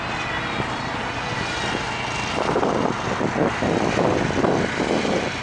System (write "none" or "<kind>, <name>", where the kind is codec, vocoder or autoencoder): none